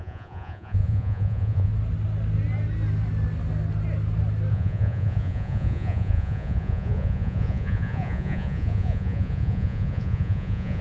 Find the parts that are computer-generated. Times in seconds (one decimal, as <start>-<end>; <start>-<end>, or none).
0.0-1.7; 4.5-10.8